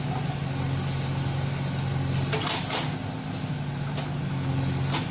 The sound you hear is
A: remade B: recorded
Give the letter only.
B